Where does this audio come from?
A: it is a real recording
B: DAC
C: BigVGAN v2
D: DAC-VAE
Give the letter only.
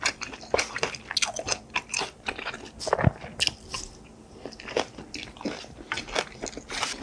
A